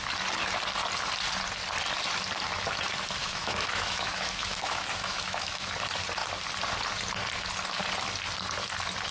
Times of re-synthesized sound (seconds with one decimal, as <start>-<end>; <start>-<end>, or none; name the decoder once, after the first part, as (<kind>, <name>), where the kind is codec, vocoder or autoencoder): 3.2-5.7 (autoencoder, DAC-VAE)